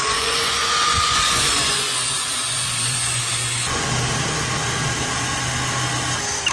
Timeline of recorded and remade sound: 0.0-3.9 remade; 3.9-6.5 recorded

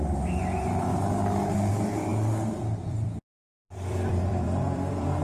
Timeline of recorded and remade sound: 0.0-2.1 recorded; 2.1-5.2 remade

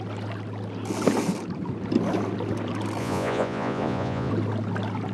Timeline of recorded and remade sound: 0.0-3.0 recorded; 3.0-4.3 remade; 4.3-5.1 recorded

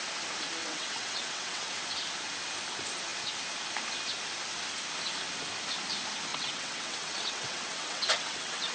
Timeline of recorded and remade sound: 0.0-0.6 recorded; 0.6-1.7 remade; 1.7-6.3 recorded; 6.3-8.7 remade

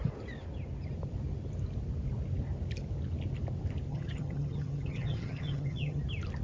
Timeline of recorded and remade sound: 0.0-3.9 recorded; 3.9-6.0 remade; 6.0-6.4 recorded

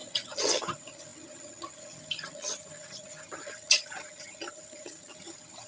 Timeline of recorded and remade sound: 0.0-5.7 remade

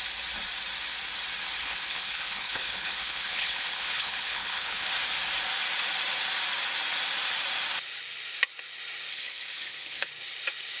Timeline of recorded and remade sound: 0.0-1.6 recorded; 1.6-4.9 remade; 4.9-9.1 recorded; 9.1-10.1 remade; 10.1-10.8 recorded

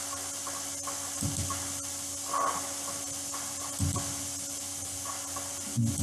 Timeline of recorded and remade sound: 0.0-6.0 recorded